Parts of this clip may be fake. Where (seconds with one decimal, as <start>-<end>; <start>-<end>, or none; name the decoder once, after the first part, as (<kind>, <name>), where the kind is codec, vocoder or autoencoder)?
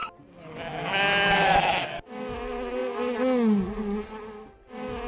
none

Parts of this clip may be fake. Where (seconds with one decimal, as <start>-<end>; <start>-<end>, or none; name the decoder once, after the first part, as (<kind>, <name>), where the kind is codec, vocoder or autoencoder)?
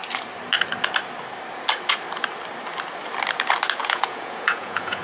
3.8-5.0 (vocoder, Vocos)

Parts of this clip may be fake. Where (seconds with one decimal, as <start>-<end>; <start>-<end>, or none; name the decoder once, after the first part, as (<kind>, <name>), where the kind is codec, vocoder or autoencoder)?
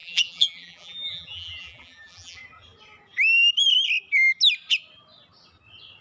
0.0-2.4 (vocoder, BigVGAN v2)